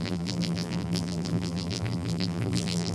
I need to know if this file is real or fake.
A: fake